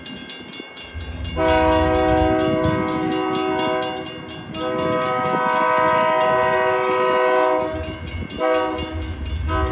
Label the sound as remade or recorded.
recorded